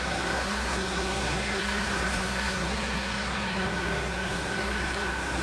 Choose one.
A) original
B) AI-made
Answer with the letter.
B